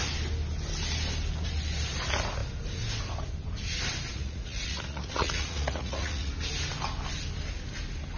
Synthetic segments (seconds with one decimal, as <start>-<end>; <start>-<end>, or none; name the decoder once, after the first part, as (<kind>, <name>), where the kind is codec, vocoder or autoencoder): 4.1-6.3 (vocoder, Vocos)